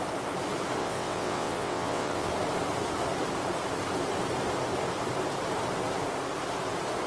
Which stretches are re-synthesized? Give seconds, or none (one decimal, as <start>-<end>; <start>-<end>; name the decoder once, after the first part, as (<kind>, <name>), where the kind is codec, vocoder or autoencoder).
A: 0.8-2.3 (vocoder, WaveNeXt)